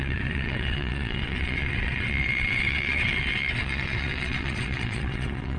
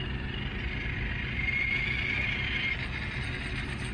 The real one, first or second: second